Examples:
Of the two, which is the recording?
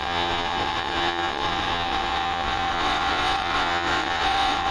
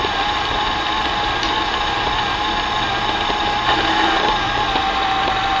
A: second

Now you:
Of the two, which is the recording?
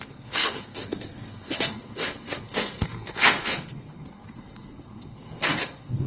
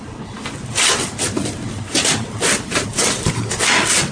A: second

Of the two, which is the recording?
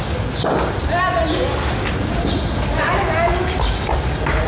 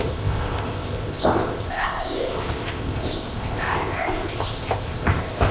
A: first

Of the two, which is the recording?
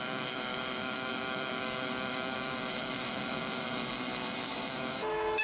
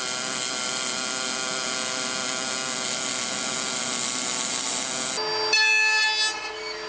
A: second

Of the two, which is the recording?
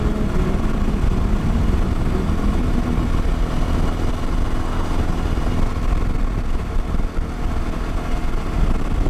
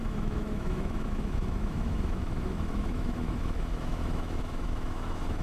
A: first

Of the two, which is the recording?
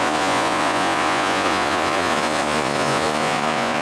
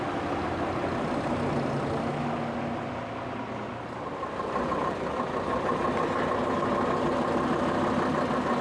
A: second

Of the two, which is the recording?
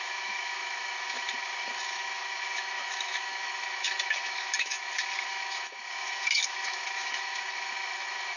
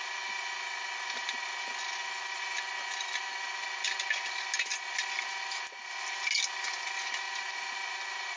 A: second